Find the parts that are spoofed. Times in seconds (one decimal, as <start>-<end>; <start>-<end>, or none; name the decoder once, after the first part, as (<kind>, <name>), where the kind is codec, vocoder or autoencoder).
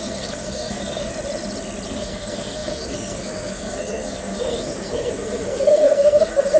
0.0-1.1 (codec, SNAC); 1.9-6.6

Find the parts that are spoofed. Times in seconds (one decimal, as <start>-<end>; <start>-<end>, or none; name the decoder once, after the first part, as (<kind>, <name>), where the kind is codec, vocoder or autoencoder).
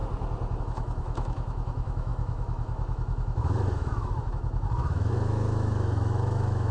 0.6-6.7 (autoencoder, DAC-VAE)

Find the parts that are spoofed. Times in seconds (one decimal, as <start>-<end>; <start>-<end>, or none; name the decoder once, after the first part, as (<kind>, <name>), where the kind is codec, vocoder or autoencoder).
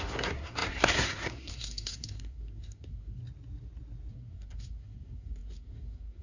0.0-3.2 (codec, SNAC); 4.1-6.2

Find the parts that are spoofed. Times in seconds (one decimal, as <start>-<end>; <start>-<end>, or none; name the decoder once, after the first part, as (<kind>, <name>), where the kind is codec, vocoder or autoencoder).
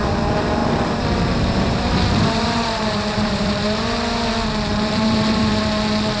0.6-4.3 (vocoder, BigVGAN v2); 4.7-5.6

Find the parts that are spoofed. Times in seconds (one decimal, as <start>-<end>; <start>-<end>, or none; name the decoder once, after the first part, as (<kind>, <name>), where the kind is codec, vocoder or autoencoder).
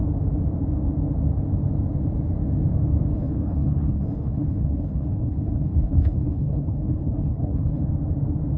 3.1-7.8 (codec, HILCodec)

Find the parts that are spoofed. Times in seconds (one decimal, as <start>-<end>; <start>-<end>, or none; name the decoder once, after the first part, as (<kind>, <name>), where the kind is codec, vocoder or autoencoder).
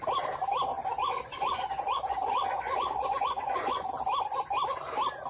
0.7-3.9 (vocoder, Vocos)